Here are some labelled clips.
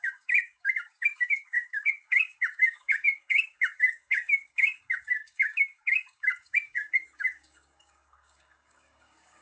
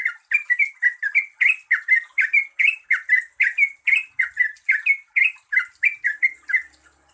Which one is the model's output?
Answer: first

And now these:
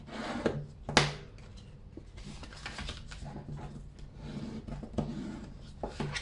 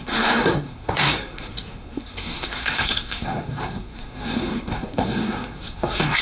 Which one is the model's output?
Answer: second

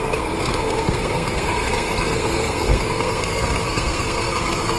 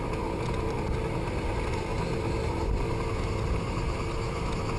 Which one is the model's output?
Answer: first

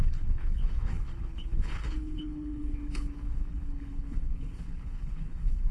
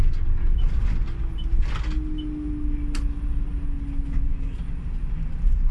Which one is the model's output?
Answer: first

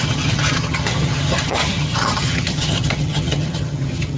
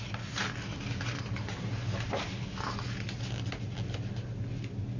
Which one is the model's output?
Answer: first